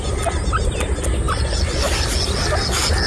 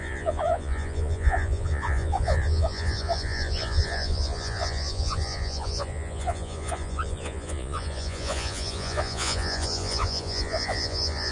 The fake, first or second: second